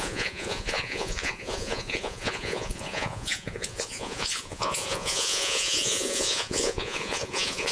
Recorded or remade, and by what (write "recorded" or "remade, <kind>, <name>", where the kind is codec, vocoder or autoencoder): remade, vocoder, Vocos